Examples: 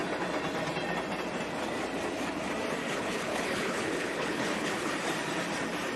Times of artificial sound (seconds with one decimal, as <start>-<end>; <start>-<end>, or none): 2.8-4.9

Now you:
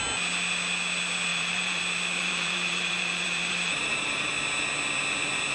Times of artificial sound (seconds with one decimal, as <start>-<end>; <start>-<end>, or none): 1.3-1.8; 2.2-4.3

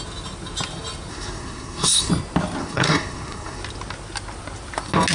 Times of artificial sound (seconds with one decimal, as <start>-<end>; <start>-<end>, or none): 1.1-2.1; 2.6-3.6

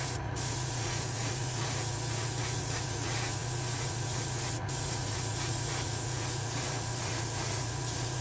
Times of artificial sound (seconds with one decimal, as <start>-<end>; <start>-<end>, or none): 0.0-8.2

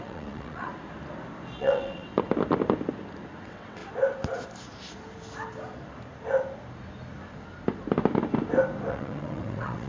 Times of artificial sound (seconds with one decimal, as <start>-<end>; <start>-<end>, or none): 0.0-0.7; 1.6-2.1; 3.4-3.8; 8.9-9.9

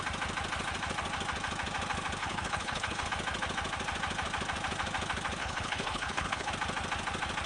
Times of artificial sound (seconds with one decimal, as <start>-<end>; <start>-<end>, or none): 2.2-3.1; 5.4-6.5

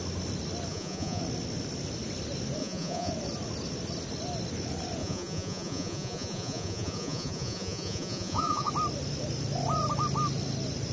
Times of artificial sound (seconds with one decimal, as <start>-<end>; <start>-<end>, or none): 0.7-1.2; 2.6-3.1; 5.0-8.7

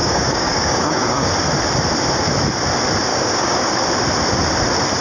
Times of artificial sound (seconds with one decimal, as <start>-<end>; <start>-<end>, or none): 0.0-1.3; 3.1-3.7